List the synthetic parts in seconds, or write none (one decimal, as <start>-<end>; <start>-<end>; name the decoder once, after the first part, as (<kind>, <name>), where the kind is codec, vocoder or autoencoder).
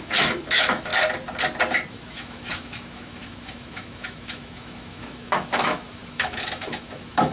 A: 0.0-0.9 (autoencoder, DAC-VAE); 1.9-7.3